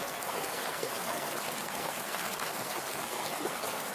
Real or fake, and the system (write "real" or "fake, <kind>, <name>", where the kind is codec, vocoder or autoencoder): fake, codec, SNAC